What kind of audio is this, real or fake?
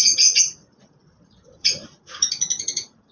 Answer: fake